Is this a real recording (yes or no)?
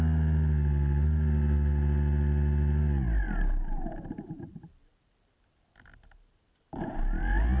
yes